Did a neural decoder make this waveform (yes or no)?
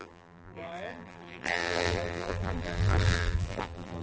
yes